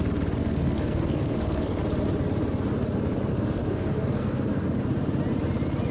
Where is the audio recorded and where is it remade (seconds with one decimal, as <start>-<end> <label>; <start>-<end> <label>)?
0.0-0.4 recorded; 0.4-1.8 remade; 1.8-3.3 recorded; 3.3-4.8 remade; 4.8-5.9 recorded